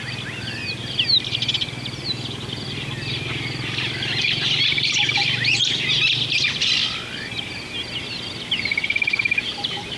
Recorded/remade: recorded